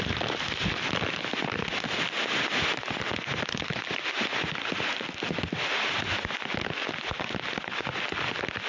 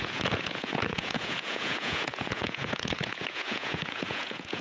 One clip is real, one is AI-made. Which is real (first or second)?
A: first